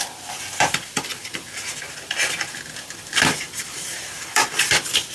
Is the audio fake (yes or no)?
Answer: yes